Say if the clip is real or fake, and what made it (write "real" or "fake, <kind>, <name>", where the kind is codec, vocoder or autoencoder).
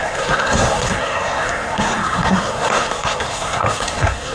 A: fake, codec, SNAC